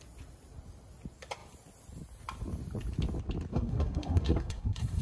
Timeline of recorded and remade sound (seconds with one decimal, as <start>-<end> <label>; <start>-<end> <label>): 0.0-3.5 recorded; 3.5-5.0 remade